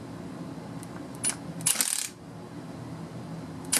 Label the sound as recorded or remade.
recorded